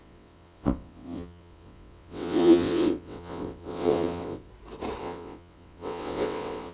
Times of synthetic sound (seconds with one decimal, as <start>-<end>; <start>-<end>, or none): 0.0-4.5; 5.0-6.7